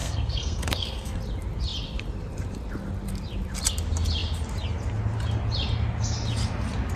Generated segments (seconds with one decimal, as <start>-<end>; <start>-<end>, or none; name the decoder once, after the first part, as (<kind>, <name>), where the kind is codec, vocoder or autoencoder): 0.0-1.2 (codec, SNAC)